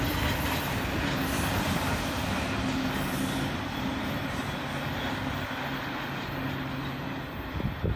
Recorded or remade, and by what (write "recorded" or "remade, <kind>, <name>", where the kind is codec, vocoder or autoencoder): recorded